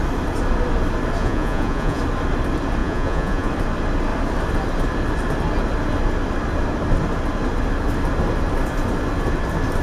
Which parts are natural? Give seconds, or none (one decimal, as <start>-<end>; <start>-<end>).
0.0-1.2; 2.0-2.8; 3.5-9.8